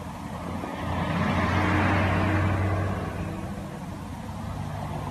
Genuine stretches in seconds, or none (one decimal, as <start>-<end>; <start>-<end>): 0.0-5.1